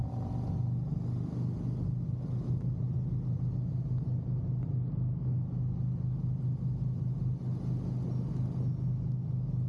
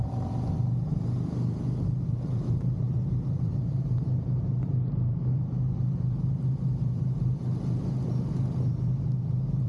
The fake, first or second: second